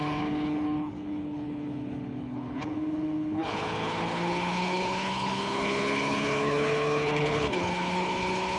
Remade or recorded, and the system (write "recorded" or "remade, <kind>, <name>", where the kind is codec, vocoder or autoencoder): remade, codec, HILCodec